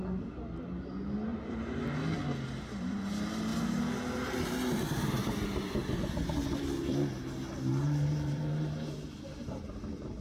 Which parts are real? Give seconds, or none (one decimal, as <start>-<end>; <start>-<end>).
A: 0.0-1.3; 1.8-7.7; 9.7-10.2